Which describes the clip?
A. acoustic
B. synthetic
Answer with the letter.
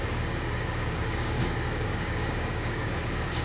B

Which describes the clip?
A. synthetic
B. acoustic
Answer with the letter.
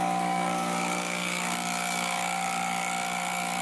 A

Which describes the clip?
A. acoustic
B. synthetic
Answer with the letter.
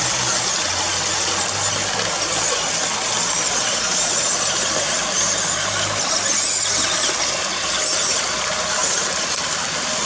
A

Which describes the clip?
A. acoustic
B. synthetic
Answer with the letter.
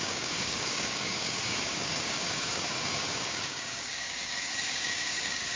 B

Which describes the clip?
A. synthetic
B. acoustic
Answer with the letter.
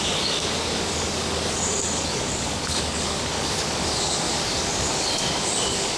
A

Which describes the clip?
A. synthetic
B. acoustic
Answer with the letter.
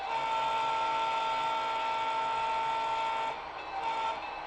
B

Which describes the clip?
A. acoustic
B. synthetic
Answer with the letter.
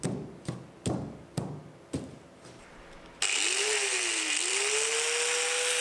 A